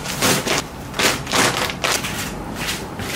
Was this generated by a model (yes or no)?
yes